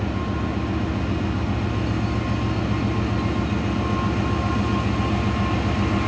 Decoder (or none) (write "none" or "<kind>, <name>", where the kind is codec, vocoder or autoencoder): none